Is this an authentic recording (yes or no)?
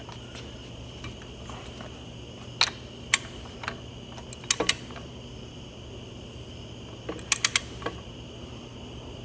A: yes